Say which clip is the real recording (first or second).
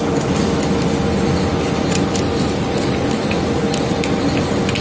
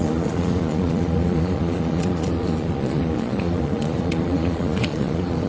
first